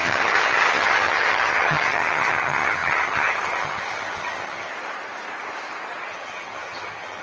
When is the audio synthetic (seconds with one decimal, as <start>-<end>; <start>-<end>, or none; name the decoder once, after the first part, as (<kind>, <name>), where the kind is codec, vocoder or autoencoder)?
0.0-4.7 (vocoder, HiFi-GAN); 6.1-7.2